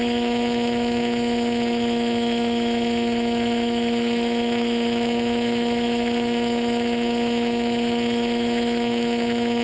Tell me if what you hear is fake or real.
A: fake